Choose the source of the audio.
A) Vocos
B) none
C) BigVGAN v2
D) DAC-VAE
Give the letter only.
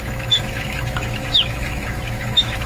D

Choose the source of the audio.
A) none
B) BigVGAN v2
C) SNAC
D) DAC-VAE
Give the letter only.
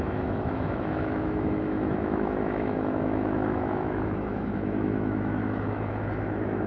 D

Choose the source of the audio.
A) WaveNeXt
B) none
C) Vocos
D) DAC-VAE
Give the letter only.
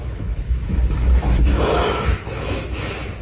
D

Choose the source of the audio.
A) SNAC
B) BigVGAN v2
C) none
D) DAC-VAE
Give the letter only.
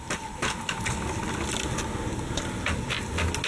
C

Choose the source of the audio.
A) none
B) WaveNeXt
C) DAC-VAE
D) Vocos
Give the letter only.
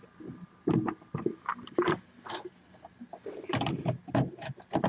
A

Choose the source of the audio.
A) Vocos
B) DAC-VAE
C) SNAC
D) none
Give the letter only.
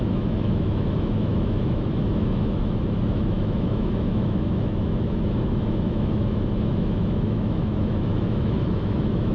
B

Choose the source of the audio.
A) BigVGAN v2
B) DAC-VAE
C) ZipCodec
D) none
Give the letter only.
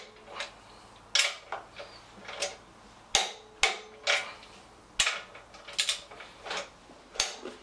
D